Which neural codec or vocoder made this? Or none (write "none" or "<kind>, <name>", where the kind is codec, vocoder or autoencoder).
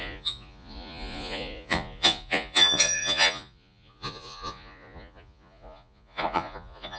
vocoder, Vocos